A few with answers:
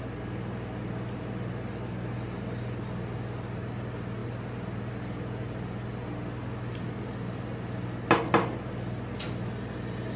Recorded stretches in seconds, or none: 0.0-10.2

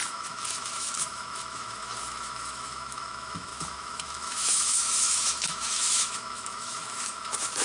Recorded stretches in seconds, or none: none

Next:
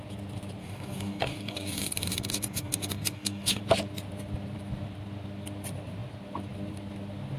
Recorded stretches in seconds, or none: 0.0-0.6; 3.6-7.4

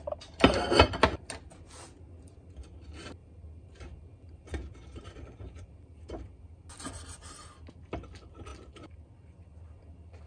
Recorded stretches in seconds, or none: 0.0-3.2; 6.2-8.5; 9.6-10.3

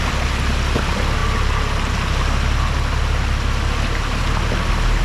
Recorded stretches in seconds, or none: 0.0-5.0

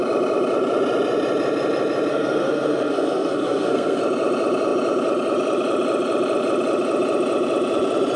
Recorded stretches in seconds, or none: 0.0-2.1; 4.0-8.2

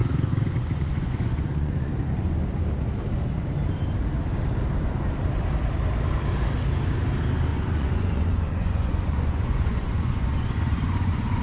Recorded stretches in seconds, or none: 1.9-7.5